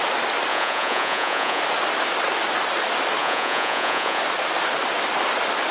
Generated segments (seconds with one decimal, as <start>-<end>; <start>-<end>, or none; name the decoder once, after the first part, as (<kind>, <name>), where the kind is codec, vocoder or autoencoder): 0.5-1.6 (vocoder, Vocos); 3.2-4.2